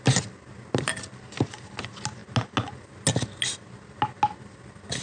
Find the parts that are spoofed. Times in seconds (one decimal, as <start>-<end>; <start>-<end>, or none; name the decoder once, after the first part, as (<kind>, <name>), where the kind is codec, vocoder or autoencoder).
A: none